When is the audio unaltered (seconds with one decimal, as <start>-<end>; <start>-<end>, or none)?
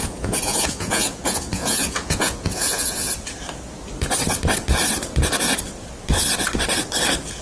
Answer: 3.1-7.4